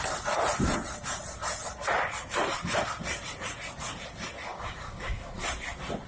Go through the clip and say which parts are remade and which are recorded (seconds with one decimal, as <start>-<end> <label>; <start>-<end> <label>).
0.0-4.5 recorded; 4.5-5.3 remade; 5.3-6.1 recorded